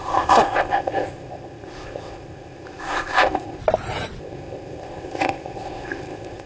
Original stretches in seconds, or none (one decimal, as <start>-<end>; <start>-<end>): 3.6-4.2